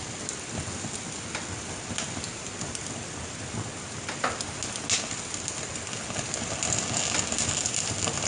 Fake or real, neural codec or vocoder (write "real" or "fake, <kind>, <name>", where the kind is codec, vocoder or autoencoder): real